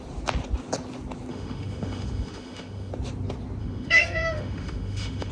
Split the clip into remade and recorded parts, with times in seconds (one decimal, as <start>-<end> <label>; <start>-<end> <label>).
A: 0.0-1.3 recorded; 1.3-2.9 remade; 2.9-3.6 recorded; 3.6-5.3 remade